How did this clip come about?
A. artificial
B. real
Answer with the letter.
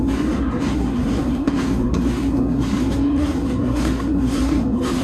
A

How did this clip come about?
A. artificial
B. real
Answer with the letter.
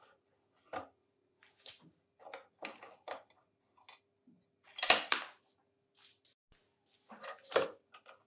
B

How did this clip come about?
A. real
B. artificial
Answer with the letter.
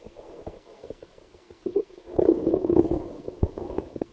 B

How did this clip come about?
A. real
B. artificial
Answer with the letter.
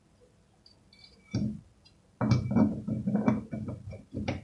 A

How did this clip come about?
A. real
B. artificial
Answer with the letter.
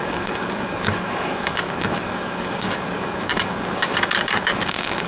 B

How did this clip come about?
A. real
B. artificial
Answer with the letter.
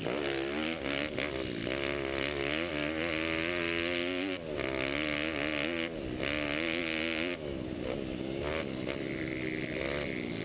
A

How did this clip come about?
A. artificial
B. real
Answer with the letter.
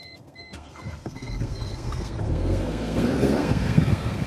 A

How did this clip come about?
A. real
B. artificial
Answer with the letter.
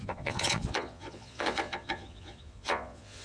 B